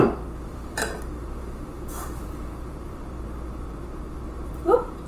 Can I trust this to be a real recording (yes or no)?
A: no